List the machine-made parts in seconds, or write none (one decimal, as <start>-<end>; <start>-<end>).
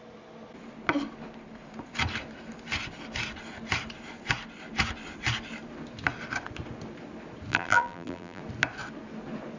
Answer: 7.5-8.4